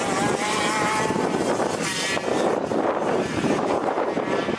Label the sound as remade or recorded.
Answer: remade